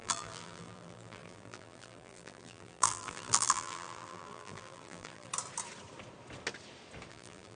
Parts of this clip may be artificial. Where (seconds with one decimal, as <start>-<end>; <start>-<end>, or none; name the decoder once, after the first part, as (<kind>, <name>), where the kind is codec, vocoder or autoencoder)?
0.0-5.3 (vocoder, BigVGAN v2); 7.1-7.5